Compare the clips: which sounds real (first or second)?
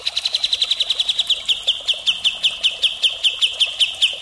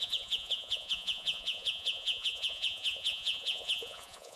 first